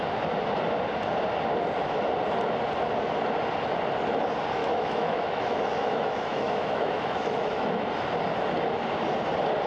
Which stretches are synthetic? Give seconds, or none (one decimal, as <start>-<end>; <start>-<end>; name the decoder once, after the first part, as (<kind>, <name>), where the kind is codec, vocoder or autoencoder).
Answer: 4.6-7.9 (autoencoder, DAC-VAE)